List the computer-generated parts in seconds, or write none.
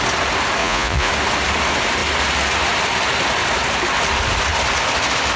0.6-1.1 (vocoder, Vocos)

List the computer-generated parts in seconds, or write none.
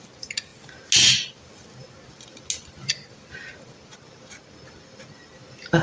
none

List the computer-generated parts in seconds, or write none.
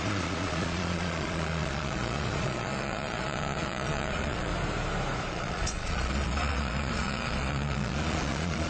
0.0-4.5 (vocoder, Vocos); 5.3-8.7